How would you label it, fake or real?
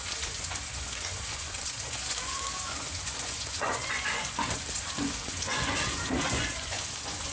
fake